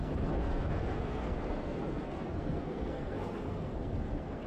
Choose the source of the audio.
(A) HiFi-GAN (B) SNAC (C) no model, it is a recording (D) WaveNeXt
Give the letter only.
B